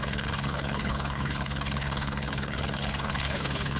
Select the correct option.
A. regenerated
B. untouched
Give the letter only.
A